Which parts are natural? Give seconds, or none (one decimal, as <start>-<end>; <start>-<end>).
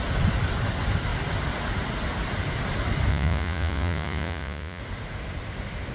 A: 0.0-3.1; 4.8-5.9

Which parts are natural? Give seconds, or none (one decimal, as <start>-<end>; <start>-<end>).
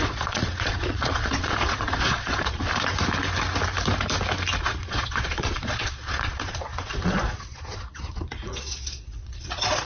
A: 2.7-4.6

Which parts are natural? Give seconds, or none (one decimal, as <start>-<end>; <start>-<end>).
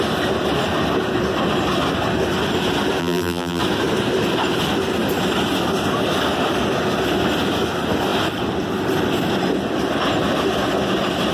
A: 0.0-3.0; 3.6-11.3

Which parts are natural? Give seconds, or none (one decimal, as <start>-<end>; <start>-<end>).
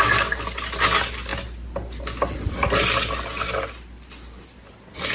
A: 0.0-5.1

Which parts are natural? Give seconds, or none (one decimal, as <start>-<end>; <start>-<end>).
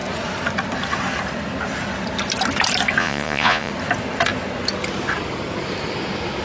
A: 0.0-3.0; 3.7-6.4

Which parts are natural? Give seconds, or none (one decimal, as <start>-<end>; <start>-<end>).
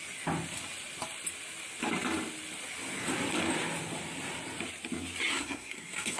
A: 0.0-5.3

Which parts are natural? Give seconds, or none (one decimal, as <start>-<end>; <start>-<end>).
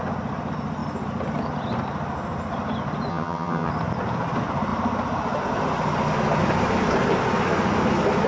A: 0.0-3.1; 3.7-8.3